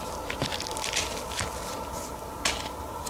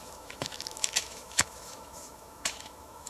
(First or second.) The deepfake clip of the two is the second